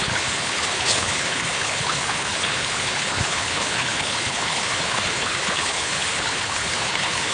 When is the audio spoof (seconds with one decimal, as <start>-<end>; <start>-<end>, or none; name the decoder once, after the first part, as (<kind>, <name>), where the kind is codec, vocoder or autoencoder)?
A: 0.0-7.3 (codec, HILCodec)